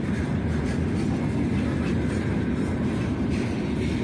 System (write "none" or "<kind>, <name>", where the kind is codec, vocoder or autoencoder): none